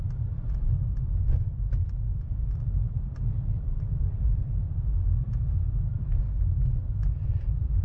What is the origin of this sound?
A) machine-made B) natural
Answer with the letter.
B